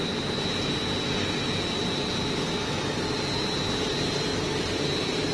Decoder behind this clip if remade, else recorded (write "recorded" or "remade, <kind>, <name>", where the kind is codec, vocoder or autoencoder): recorded